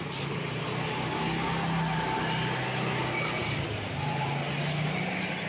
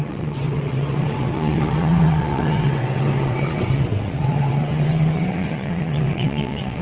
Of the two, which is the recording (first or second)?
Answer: first